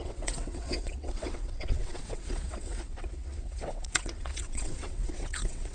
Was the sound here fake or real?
fake